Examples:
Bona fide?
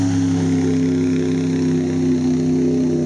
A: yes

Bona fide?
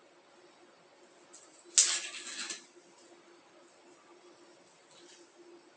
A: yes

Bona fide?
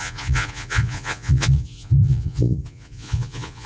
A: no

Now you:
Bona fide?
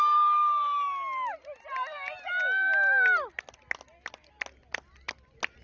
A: yes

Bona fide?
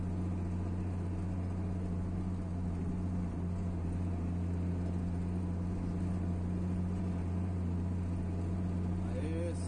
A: yes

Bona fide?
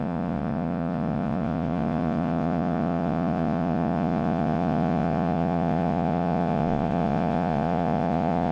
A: no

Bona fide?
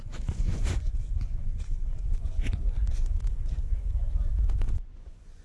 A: no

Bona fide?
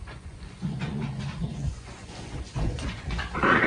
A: no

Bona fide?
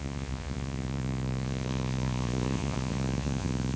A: no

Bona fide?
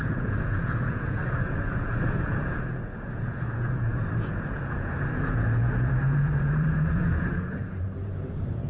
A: no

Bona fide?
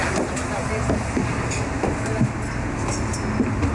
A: yes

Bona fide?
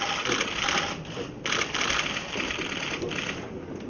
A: yes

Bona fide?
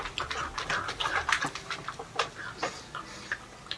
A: yes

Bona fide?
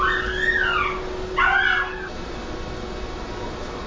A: yes